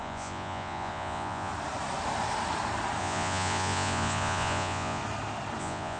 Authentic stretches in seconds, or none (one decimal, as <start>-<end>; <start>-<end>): 1.5-3.0; 5.0-5.6